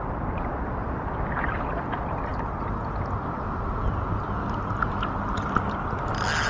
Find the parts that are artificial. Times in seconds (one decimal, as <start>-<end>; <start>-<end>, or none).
none